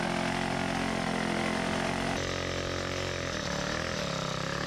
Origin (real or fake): real